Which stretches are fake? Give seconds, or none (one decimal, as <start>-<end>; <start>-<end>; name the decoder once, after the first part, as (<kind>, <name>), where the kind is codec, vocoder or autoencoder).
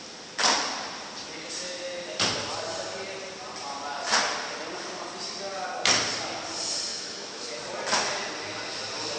6.9-7.6 (autoencoder, DAC-VAE)